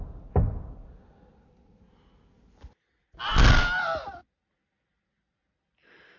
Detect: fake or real real